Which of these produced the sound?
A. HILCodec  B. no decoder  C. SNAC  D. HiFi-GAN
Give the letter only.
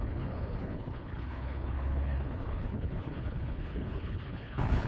A